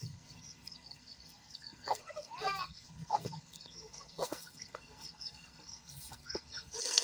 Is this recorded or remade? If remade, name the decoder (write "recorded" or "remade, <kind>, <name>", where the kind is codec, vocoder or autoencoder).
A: remade, codec, SNAC